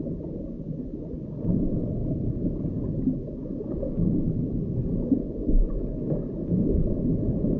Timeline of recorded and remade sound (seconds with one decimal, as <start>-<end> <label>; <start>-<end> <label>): 0.0-7.6 recorded